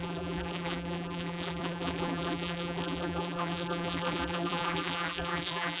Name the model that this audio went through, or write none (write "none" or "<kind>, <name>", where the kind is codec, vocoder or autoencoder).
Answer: vocoder, BigVGAN v2